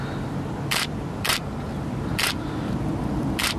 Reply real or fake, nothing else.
fake